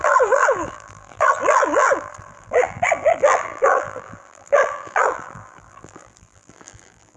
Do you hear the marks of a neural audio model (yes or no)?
yes